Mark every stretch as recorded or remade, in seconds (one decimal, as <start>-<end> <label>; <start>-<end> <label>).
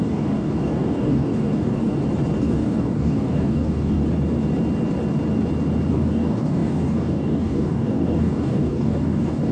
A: 0.0-1.8 remade; 1.8-2.4 recorded; 2.4-4.0 remade; 4.0-5.9 recorded; 5.9-9.5 remade